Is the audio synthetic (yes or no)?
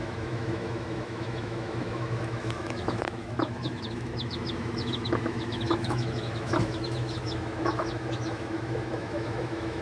yes